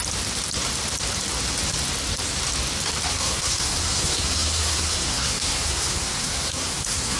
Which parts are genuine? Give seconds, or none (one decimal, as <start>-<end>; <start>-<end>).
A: 0.0-3.1